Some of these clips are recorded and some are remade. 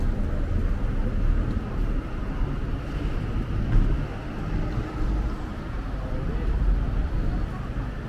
recorded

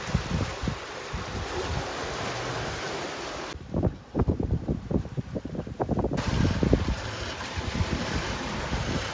recorded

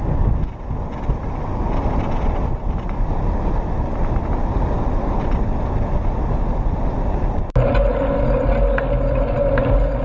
recorded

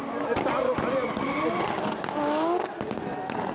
recorded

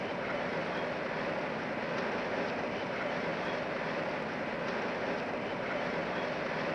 recorded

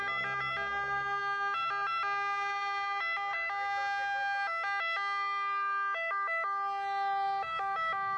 recorded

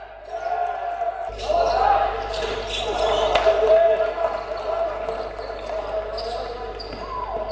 recorded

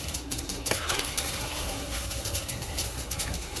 remade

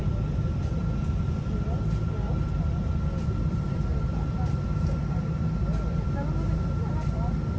recorded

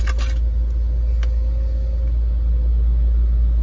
recorded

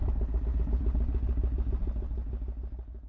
recorded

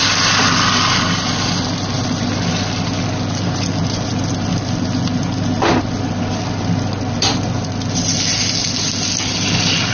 recorded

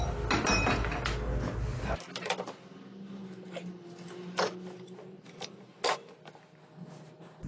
recorded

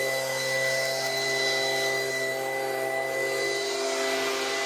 recorded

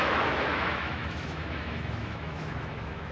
remade